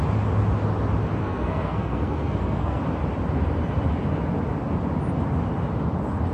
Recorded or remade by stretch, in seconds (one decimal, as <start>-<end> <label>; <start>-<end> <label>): 0.0-1.2 recorded; 1.2-2.8 remade; 2.8-6.3 recorded